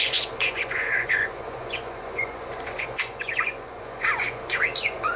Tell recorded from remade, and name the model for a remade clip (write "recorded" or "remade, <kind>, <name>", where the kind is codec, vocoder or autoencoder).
remade, vocoder, Vocos